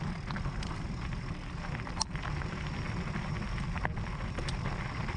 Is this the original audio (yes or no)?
yes